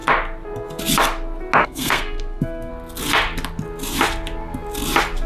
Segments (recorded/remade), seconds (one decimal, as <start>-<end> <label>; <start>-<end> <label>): 0.0-1.6 recorded; 1.6-2.7 remade; 2.7-5.3 recorded